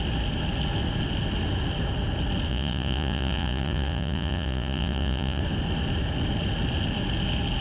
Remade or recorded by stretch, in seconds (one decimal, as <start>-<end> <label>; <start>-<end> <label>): 0.0-2.5 recorded; 2.5-5.4 remade; 5.4-7.6 recorded